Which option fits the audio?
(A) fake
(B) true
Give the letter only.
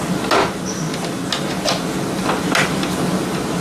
B